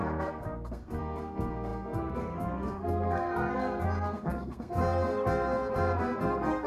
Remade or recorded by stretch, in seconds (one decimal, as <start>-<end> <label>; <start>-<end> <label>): 0.0-4.8 remade; 4.8-6.2 recorded; 6.2-6.7 remade